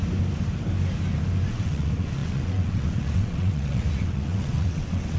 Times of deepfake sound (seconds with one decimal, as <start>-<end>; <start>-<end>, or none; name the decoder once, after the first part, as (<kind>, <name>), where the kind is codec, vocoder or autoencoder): 1.5-5.2 (vocoder, WaveNeXt)